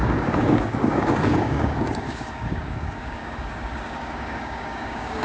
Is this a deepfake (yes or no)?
yes